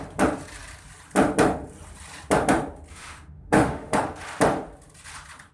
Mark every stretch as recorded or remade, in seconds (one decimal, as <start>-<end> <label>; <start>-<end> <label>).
0.0-2.9 recorded; 2.9-4.0 remade; 4.0-5.5 recorded